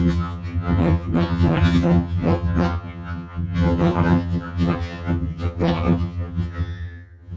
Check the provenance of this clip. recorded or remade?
remade